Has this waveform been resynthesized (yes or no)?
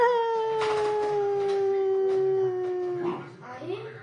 no